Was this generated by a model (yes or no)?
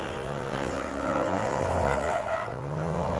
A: yes